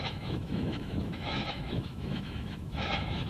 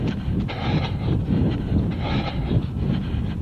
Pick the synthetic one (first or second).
first